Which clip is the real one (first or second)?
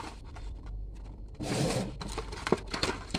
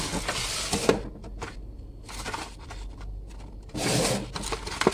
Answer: second